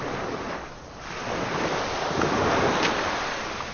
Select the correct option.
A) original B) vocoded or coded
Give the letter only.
A